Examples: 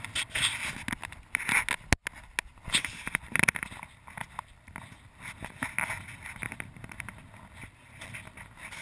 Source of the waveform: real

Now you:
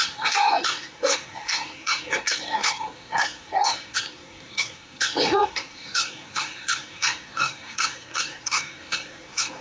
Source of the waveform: fake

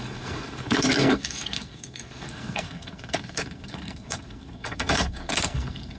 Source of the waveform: fake